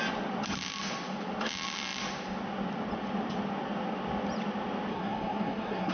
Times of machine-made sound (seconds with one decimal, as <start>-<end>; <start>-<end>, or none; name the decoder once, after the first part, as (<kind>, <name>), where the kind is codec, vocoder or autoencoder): 4.9-5.9 (codec, SNAC)